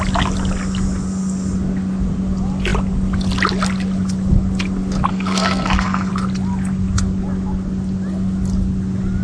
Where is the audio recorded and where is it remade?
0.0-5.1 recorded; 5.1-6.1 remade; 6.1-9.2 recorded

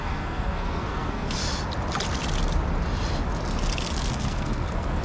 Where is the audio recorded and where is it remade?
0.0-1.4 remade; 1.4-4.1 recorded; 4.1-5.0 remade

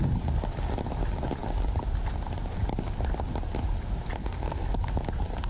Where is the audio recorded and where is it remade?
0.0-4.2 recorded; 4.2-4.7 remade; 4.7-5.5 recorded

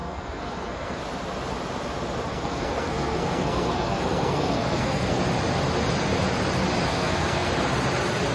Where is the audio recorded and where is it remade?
0.0-1.0 remade; 1.0-2.3 recorded; 2.3-5.2 remade; 5.2-6.9 recorded; 6.9-7.5 remade; 7.5-8.3 recorded